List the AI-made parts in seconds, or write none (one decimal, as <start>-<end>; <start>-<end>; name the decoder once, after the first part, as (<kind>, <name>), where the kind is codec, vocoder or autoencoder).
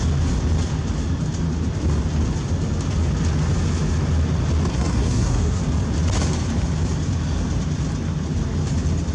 4.7-5.6 (codec, SNAC)